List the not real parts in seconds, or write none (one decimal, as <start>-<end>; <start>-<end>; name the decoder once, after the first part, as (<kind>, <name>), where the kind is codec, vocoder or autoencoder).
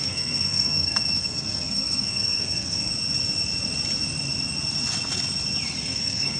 0.0-2.9 (codec, SNAC); 5.8-6.4